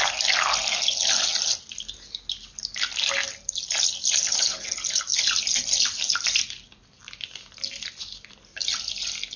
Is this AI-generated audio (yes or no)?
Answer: no